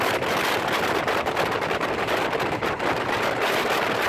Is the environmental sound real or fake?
real